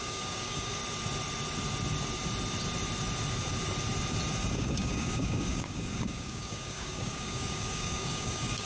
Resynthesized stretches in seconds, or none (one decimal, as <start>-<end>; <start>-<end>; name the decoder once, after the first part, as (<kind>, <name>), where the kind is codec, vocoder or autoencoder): 0.0-0.8 (codec, DAC); 4.5-8.7